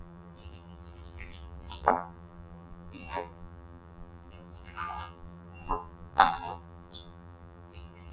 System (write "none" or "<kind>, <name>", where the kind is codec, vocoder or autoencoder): vocoder, BigVGAN v2